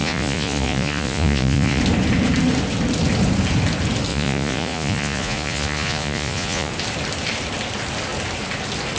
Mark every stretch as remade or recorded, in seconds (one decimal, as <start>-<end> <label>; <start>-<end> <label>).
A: 0.0-1.8 remade; 1.8-4.1 recorded; 4.1-6.7 remade; 6.7-9.0 recorded